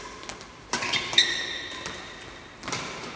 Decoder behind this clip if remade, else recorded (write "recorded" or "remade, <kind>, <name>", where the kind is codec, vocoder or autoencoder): recorded